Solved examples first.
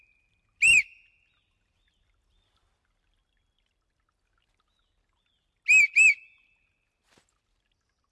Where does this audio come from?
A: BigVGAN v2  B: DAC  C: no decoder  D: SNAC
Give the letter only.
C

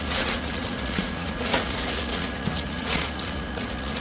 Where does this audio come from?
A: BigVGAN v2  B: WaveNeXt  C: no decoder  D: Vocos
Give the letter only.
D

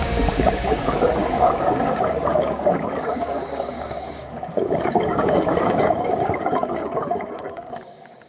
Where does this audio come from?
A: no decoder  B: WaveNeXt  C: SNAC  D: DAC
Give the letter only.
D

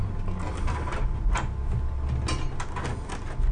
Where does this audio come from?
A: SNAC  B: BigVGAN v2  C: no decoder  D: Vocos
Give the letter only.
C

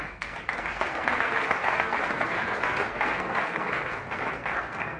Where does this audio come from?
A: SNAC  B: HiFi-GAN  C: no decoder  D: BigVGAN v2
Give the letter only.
A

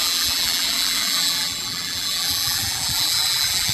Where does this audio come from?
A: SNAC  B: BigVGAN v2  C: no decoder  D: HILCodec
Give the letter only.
B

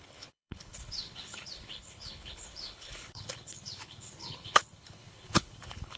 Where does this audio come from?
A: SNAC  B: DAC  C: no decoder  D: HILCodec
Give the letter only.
D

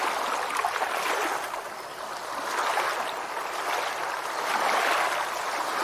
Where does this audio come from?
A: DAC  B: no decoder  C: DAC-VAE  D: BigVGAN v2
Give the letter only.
B